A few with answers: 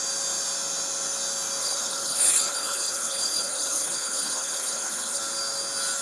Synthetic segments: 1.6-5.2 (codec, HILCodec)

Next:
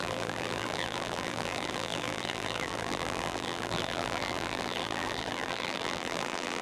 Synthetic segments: 0.0-6.6 (vocoder, BigVGAN v2)

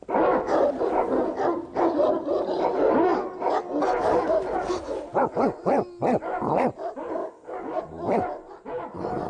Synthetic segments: 7.2-7.8 (codec, DAC)